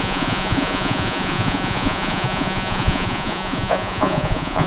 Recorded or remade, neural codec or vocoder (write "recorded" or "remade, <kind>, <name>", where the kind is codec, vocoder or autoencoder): remade, vocoder, Vocos